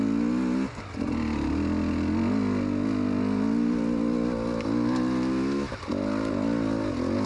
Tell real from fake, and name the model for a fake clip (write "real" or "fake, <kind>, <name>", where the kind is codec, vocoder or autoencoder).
real